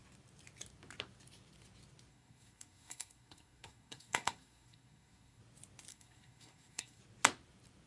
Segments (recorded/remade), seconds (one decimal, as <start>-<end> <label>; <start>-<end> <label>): 0.0-2.1 recorded; 2.1-5.4 remade; 5.4-5.9 recorded; 5.9-7.0 remade; 7.0-7.9 recorded